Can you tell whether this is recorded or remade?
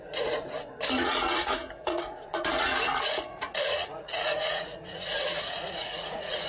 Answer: remade